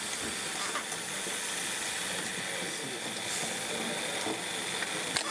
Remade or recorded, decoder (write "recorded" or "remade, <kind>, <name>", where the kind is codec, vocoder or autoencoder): recorded